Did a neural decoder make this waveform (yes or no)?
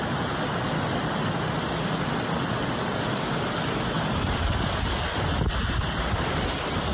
no